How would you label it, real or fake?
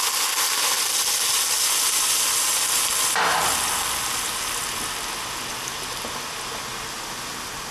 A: real